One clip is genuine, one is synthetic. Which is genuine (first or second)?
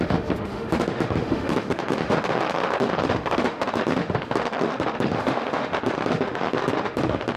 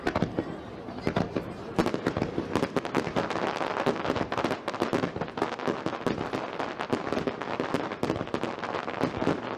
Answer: second